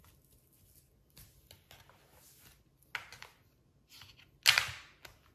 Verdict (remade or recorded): recorded